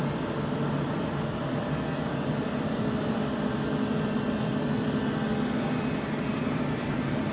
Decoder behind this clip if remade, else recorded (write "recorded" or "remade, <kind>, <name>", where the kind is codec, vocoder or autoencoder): recorded